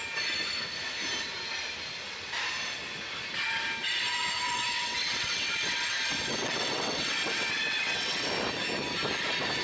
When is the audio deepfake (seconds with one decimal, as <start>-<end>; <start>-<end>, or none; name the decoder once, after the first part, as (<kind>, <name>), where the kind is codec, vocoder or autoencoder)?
3.8-8.3 (vocoder, WaveNeXt)